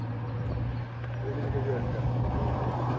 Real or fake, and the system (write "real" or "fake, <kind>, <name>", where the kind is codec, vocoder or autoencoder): real